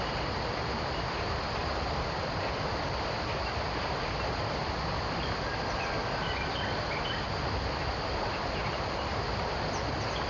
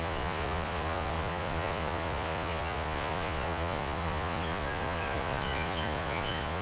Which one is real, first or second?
first